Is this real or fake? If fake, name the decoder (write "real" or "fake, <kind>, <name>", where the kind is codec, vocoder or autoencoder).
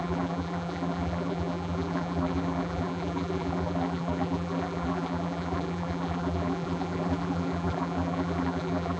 fake, vocoder, BigVGAN v2